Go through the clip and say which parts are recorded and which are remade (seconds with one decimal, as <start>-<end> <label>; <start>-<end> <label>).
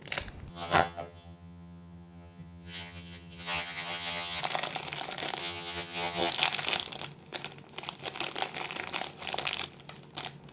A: 0.0-0.5 recorded; 0.5-4.4 remade; 4.4-5.4 recorded; 5.4-6.3 remade; 6.3-10.5 recorded